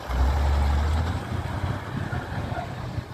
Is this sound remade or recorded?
recorded